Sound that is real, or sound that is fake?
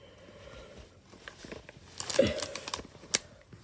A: real